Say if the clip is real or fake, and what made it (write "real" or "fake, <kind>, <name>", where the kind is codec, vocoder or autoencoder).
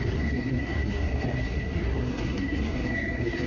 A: fake, codec, SNAC